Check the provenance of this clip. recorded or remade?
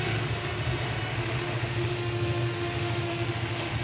remade